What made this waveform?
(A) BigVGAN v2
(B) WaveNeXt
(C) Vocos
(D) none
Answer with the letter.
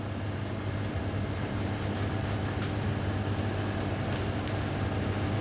D